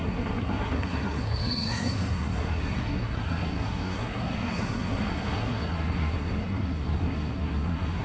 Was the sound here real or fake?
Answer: fake